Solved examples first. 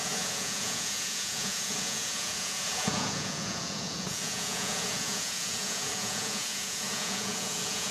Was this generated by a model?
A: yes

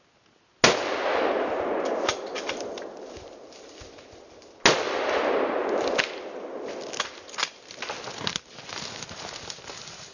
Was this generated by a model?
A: no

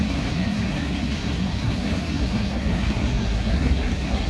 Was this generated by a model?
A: yes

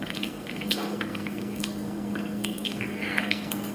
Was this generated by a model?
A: yes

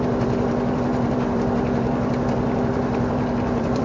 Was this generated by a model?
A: yes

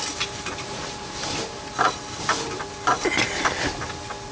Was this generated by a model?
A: no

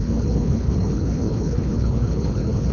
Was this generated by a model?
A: yes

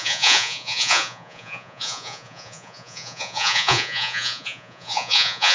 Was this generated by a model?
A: yes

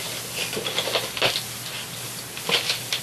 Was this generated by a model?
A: no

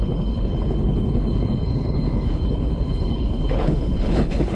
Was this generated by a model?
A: yes